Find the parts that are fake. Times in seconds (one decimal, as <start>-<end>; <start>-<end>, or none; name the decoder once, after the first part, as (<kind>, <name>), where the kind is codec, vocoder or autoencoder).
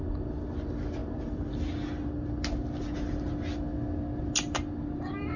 none